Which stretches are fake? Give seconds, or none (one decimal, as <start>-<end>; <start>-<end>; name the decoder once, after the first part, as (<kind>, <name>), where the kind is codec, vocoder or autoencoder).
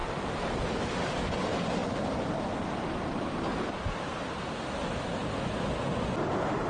0.0-0.6 (vocoder, BigVGAN v2); 1.5-2.4; 3.5-4.6